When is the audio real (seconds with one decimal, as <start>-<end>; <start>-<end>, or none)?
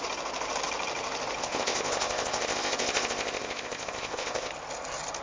0.0-1.4; 4.5-5.2